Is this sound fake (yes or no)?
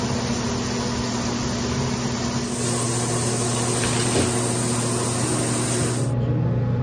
no